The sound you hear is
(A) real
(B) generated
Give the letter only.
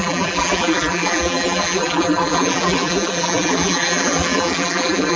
B